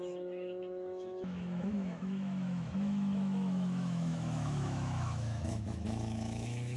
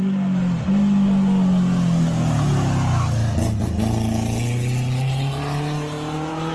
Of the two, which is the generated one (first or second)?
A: first